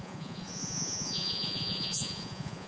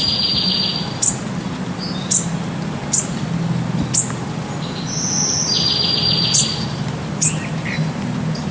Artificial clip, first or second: first